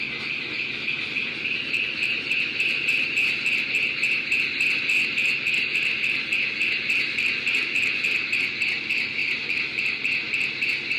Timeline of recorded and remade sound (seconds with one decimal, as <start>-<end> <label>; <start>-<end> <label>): 0.0-11.0 recorded